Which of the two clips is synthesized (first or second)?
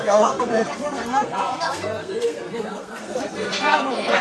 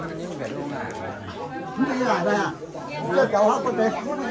first